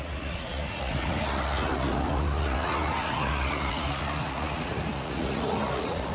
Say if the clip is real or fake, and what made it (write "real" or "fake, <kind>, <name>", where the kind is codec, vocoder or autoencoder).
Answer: fake, vocoder, Vocos